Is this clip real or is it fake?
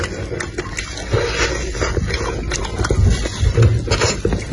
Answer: real